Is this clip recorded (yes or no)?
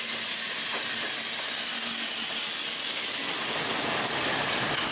yes